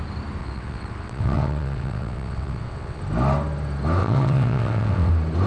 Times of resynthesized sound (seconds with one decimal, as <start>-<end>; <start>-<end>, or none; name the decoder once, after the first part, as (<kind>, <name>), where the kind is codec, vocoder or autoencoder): 0.4-3.0 (vocoder, WaveNeXt); 4.0-5.1